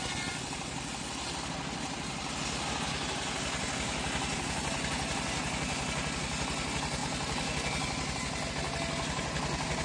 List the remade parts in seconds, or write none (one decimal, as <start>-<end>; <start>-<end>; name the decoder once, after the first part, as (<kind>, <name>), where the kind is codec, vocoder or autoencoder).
none